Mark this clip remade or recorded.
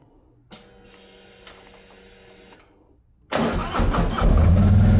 recorded